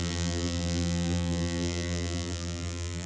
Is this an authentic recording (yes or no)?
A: no